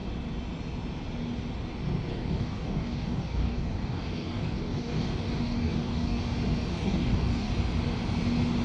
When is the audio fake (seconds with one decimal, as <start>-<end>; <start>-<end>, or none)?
2.1-6.2; 6.7-7.5